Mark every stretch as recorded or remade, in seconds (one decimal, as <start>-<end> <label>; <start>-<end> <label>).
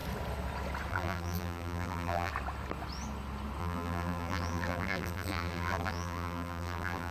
0.0-0.9 recorded; 0.9-2.3 remade; 2.3-3.6 recorded; 3.6-7.1 remade